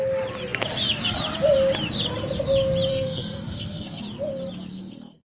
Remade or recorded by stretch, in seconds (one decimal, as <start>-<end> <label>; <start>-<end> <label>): 0.0-2.9 recorded; 2.9-4.0 remade; 4.0-4.7 recorded; 4.7-5.3 remade